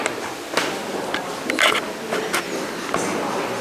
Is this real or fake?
real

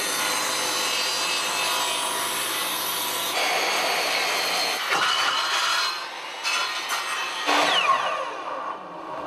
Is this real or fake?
real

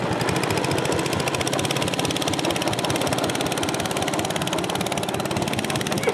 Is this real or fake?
real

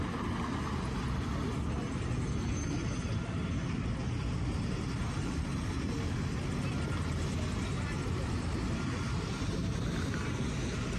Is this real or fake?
real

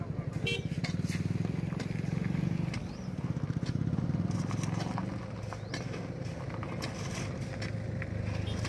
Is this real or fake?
real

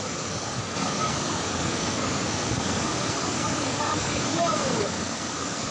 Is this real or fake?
fake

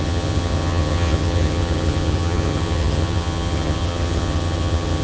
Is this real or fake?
fake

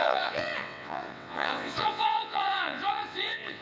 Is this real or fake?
fake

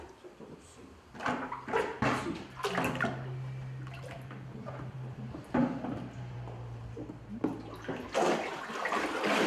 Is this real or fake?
real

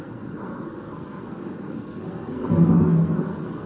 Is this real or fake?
fake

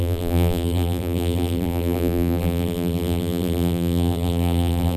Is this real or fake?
fake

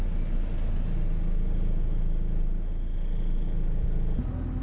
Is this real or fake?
real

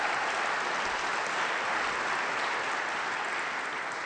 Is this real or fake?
real